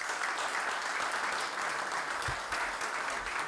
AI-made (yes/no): no